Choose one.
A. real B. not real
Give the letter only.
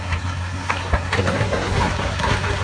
B